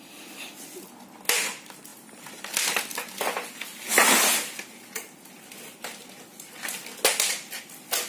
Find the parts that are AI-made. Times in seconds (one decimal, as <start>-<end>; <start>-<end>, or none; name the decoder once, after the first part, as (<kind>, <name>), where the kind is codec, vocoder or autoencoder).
none